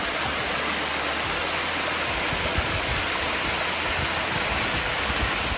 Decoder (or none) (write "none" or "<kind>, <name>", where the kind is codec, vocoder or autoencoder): none